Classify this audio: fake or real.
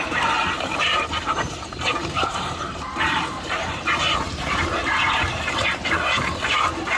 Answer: fake